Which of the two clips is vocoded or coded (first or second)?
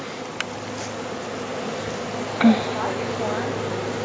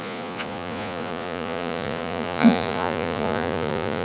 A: second